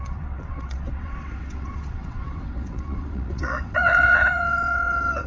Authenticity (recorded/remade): remade